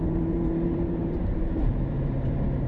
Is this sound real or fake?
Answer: fake